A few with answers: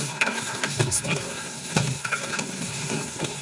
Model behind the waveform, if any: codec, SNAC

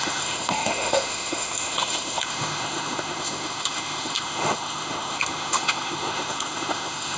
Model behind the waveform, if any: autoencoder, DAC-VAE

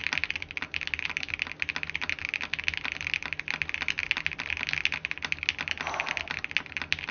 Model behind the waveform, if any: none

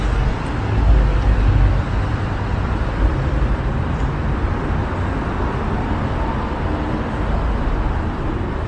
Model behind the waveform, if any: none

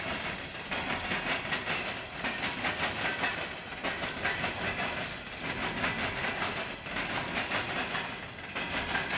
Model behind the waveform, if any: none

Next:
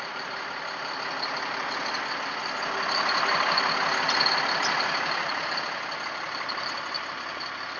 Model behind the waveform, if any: none